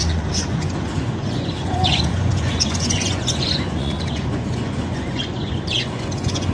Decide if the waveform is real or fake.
fake